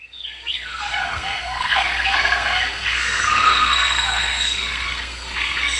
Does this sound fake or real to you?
fake